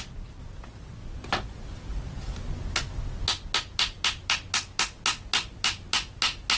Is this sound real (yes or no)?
yes